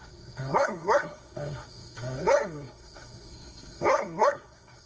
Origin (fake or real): fake